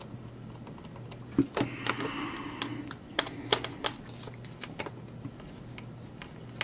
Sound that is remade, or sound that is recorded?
recorded